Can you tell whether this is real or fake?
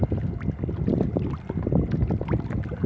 real